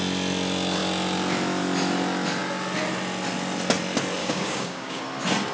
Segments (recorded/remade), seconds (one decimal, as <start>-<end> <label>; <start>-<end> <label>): 0.0-4.2 recorded; 4.2-5.0 remade; 5.0-5.5 recorded